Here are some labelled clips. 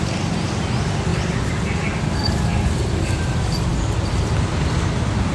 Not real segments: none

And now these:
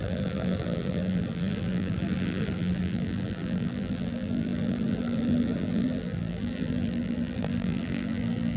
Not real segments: 0.0-8.6 (vocoder, BigVGAN v2)

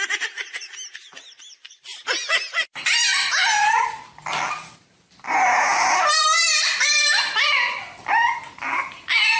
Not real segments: 3.4-4.3 (vocoder, BigVGAN v2); 5.7-7.3

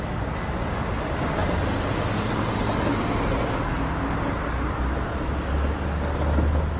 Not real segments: none

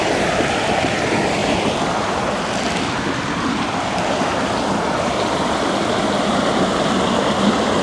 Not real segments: none

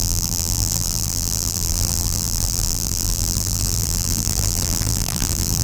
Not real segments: 0.0-5.6 (vocoder, BigVGAN v2)